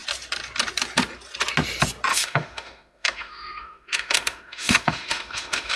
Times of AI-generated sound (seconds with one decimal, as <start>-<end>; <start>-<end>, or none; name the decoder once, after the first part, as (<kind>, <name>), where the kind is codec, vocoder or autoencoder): 2.1-5.8 (autoencoder, DAC-VAE)